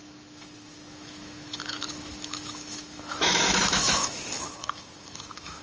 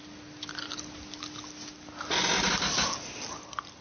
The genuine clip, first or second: second